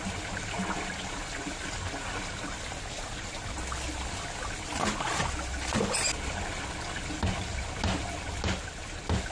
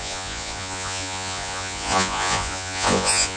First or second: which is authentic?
first